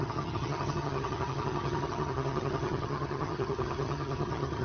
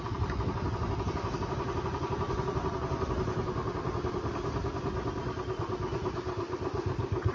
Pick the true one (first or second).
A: second